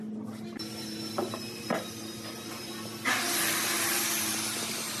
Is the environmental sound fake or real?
real